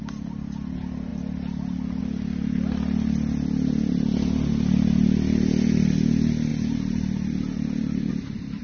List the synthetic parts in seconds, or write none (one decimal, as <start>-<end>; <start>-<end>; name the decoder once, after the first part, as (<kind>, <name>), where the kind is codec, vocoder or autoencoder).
none